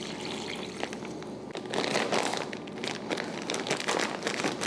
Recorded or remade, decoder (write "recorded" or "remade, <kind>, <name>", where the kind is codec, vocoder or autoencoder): recorded